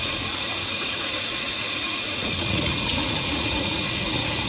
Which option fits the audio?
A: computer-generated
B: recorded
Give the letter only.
A